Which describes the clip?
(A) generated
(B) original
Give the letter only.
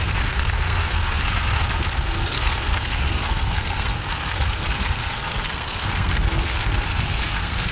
A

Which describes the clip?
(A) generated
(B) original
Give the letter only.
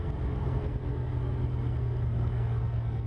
A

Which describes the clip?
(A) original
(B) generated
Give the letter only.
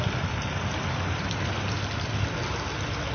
A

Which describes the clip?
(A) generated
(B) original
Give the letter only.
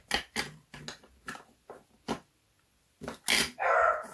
B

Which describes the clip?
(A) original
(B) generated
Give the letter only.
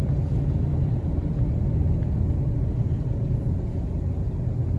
A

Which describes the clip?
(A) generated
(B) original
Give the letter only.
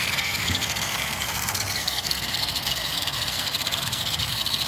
A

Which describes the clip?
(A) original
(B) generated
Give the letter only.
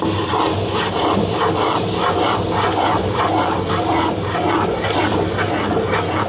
A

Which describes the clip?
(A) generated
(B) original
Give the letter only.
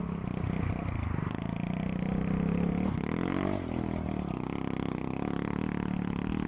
B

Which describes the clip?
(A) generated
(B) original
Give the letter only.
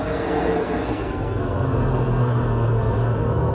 A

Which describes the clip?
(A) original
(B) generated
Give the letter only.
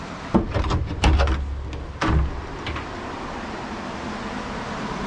A